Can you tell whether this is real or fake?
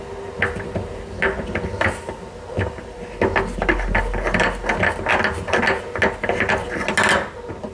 real